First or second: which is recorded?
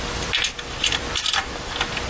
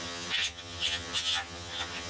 first